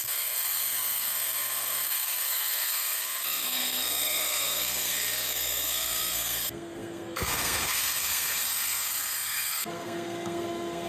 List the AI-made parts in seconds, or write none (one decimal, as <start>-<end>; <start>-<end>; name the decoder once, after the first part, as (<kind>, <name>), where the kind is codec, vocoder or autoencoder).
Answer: 0.0-10.9 (codec, SNAC)